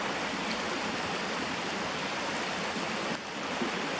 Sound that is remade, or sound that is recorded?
recorded